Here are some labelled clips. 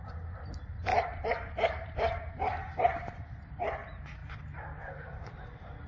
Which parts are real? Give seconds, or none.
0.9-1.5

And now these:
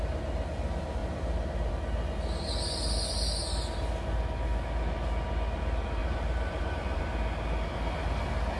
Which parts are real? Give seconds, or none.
0.0-6.0; 7.0-8.6

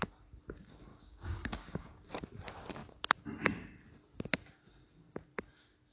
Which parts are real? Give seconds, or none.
0.0-0.9; 2.1-5.9

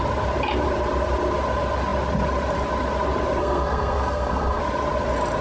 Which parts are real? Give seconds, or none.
0.0-3.4; 4.6-5.4

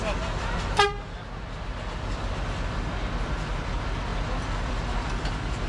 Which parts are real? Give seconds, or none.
0.0-5.7

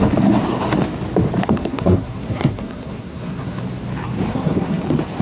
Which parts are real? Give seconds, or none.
0.0-1.4; 3.6-4.3; 4.8-5.2

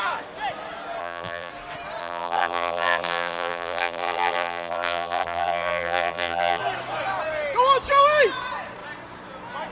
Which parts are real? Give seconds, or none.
0.0-1.0; 1.5-2.0; 6.6-9.7

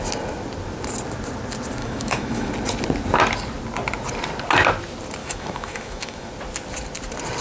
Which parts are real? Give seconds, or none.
0.0-1.8; 2.5-5.2; 6.3-7.4